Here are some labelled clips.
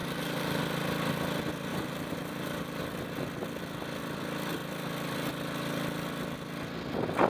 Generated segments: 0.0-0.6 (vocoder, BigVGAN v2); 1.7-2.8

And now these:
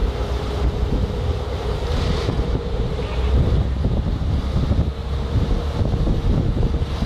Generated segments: 0.0-4.3 (vocoder, BigVGAN v2); 5.0-5.8

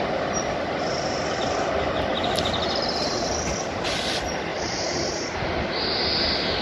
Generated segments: 4.5-5.8 (vocoder, BigVGAN v2)

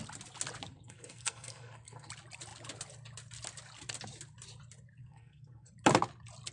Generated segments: 0.7-2.1 (codec, SNAC); 5.0-5.7

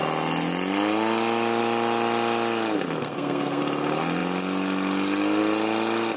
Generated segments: 3.0-3.6 (codec, SNAC)

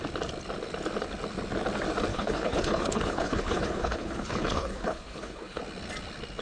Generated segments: 2.1-5.6 (codec, HILCodec)

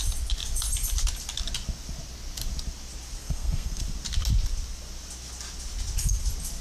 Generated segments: 3.2-3.8 (codec, SNAC)